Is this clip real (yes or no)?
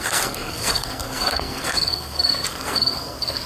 no